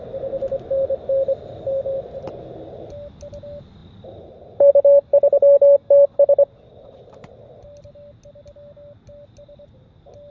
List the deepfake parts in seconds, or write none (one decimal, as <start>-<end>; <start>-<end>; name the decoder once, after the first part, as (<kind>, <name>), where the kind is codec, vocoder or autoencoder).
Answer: none